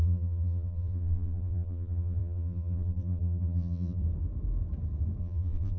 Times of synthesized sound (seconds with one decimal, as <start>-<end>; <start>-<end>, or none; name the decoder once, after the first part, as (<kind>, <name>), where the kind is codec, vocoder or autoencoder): 0.0-4.0 (vocoder, BigVGAN v2); 5.2-5.8